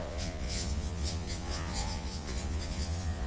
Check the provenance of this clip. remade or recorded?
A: remade